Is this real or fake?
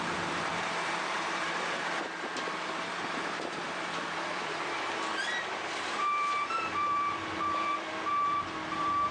fake